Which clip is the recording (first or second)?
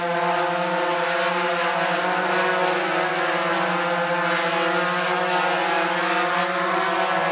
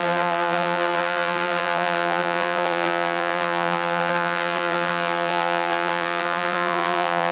first